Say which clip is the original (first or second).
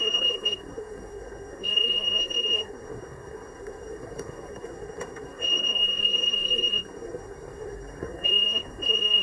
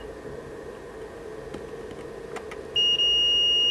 second